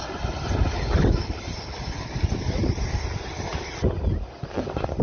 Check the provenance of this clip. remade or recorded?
recorded